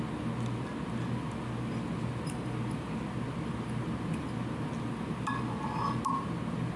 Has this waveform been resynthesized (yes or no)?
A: no